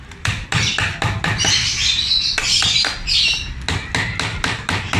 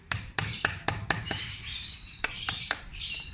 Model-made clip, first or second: second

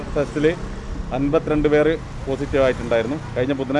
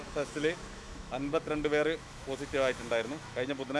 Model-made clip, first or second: second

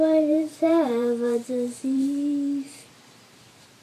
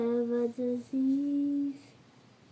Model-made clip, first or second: first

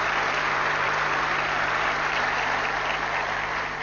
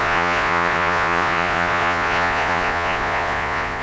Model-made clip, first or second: second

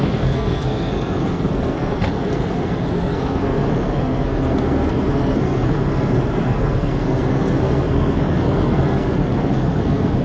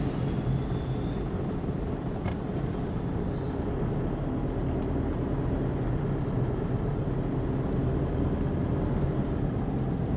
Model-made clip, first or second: first